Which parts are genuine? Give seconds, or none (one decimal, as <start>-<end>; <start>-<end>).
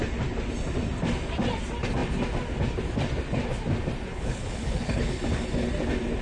0.0-4.1; 5.2-6.2